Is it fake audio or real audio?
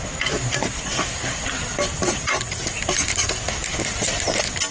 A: real